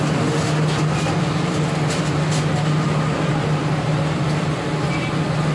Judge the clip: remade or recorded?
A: recorded